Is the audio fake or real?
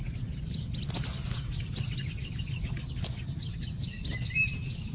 real